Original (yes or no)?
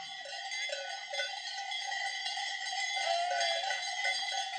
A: yes